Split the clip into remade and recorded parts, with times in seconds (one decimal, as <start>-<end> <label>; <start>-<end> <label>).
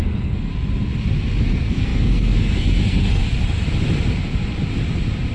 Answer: 0.0-0.5 remade; 0.5-1.4 recorded; 1.4-3.2 remade; 3.2-5.3 recorded